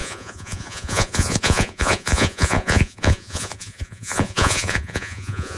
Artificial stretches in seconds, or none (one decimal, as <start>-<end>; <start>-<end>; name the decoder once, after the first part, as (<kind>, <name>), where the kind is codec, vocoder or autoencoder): 0.0-5.6 (vocoder, Vocos)